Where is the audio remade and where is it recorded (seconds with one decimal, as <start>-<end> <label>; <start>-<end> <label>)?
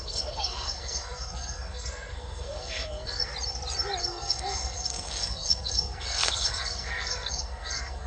0.0-3.3 remade; 3.3-4.0 recorded; 4.0-8.1 remade